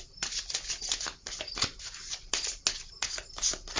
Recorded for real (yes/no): yes